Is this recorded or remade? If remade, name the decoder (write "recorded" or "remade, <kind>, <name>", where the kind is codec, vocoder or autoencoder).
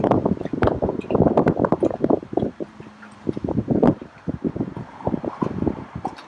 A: remade, vocoder, BigVGAN v2